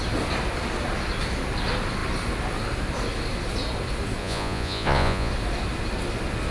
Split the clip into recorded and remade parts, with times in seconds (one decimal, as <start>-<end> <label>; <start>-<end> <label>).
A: 0.0-4.2 recorded; 4.2-5.3 remade; 5.3-6.5 recorded